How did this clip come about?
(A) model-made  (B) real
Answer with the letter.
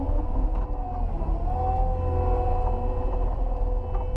B